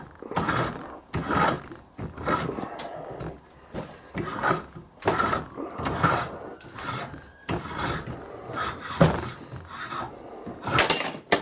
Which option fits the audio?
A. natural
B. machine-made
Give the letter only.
A